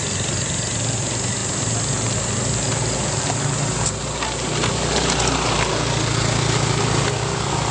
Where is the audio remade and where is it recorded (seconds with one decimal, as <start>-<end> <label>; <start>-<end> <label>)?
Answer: 0.0-7.7 recorded